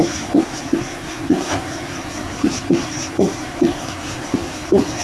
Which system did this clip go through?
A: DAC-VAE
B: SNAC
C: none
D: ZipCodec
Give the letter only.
B